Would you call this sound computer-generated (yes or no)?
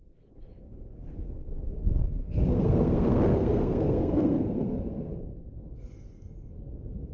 yes